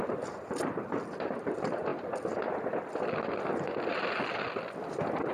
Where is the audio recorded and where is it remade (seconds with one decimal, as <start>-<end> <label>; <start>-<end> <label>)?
0.0-5.3 recorded